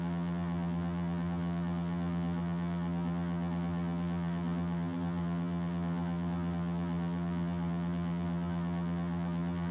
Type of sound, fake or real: fake